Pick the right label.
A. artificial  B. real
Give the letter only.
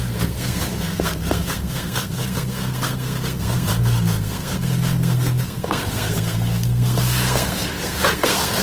A